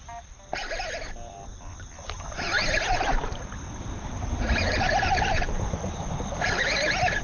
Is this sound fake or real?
real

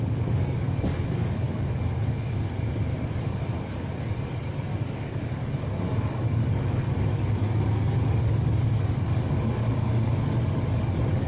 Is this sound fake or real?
fake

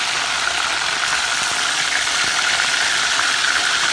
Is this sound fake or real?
real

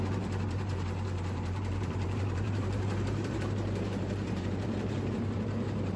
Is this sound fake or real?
fake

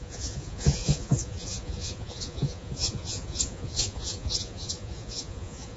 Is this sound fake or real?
fake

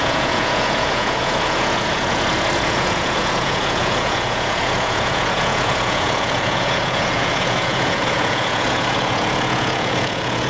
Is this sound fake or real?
fake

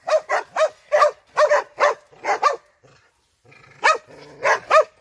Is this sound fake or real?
real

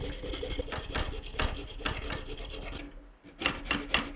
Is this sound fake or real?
real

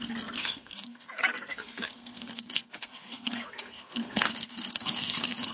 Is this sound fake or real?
fake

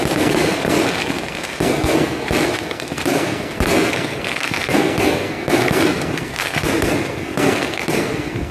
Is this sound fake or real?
fake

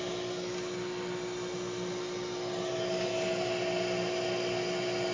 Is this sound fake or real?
real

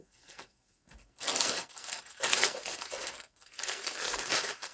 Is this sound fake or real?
fake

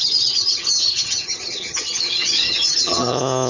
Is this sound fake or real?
fake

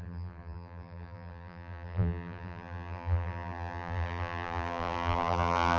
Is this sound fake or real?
fake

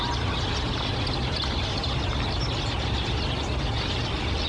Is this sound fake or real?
real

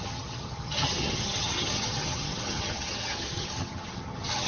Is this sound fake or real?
fake